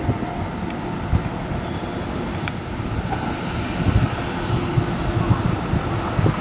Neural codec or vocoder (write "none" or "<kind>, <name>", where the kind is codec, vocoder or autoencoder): none